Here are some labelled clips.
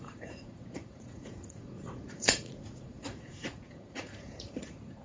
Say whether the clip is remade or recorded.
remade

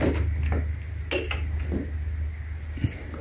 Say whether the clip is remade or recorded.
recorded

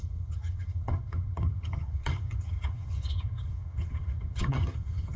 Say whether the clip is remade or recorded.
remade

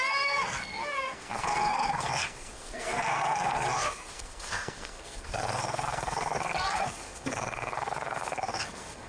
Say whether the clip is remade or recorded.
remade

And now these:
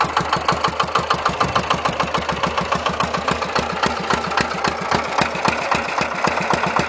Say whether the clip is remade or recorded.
recorded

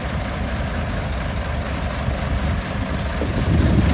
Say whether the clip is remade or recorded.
recorded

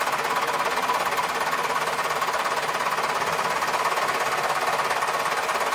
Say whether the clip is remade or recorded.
recorded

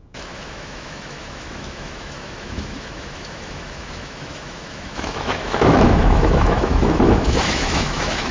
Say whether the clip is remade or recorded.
remade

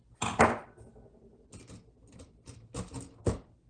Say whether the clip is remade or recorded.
recorded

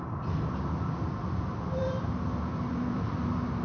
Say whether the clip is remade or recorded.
remade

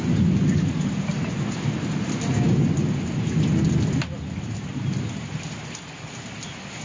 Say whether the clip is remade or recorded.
recorded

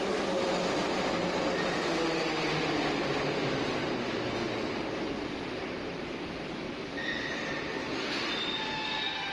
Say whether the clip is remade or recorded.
recorded